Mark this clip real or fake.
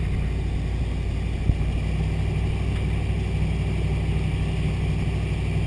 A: real